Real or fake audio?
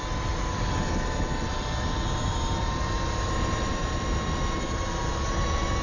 real